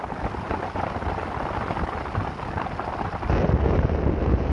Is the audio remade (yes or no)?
no